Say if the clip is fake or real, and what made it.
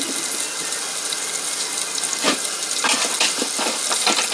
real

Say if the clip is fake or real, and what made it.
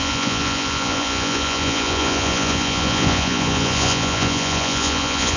fake, vocoder, Vocos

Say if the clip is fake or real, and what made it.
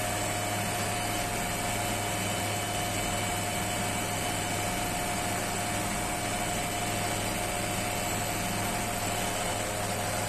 real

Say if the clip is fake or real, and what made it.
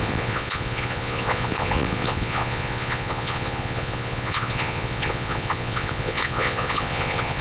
fake, vocoder, Vocos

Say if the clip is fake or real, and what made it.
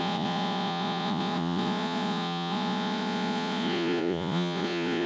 fake, vocoder, Vocos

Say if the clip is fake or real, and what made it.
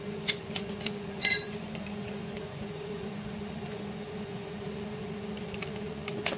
fake, vocoder, Vocos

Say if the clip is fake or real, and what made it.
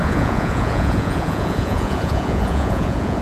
fake, vocoder, Vocos